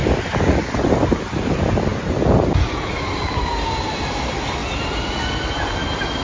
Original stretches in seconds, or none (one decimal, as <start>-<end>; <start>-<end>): 0.0-6.2